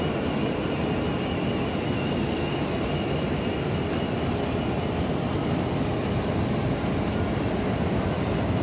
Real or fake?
real